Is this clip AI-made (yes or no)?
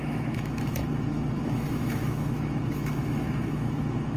yes